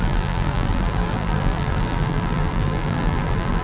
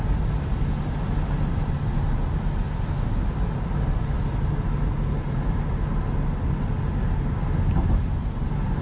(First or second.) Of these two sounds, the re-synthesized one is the first